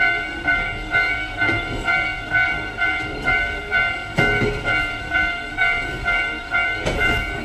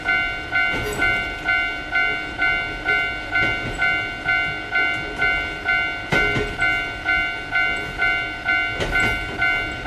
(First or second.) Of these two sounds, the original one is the second